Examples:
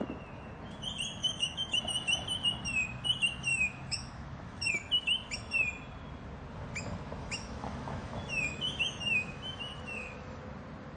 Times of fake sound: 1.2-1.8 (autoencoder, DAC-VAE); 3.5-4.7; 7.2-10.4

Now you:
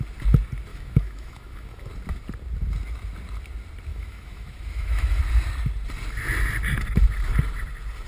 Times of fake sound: 0.7-1.9 (autoencoder, DAC-VAE); 3.9-5.2

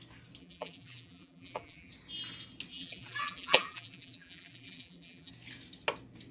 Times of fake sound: 0.4-1.9 (vocoder, BigVGAN v2); 2.7-5.3

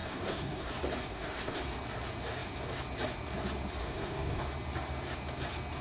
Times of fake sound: 0.0-0.7 (codec, SNAC); 1.1-1.6; 3.8-4.4

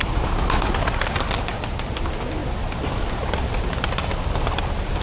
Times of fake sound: 0.0-2.4 (vocoder, BigVGAN v2); 4.1-5.0

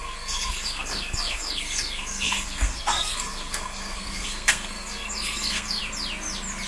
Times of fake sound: 0.0-5.8 (codec, SNAC)

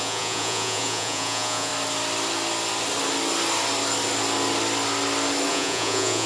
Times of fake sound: 0.0-1.7 (vocoder, Vocos); 5.5-6.3